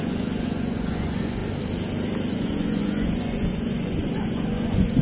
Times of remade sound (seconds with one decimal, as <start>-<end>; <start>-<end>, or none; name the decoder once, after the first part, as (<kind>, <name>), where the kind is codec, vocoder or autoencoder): 0.0-1.4 (vocoder, Vocos); 2.3-5.0